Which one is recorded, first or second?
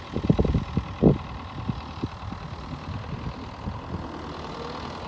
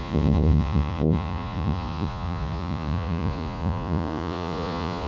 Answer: first